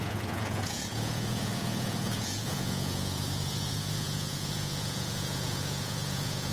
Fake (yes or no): yes